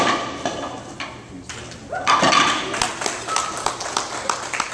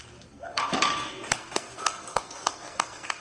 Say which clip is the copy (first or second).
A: second